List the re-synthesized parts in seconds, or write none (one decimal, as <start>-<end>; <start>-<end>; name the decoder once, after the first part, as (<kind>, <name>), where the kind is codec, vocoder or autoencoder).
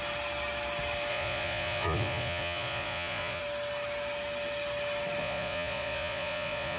1.1-3.4 (vocoder, Vocos); 5.2-6.8